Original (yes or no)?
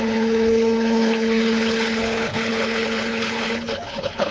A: no